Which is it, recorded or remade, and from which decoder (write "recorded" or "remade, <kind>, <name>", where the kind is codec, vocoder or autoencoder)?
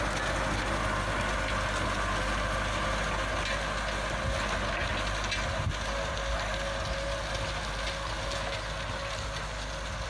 recorded